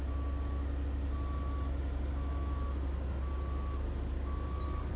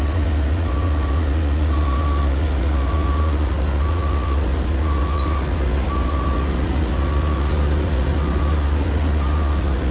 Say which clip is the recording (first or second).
first